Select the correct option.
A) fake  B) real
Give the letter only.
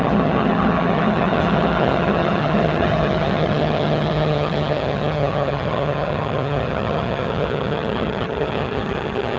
A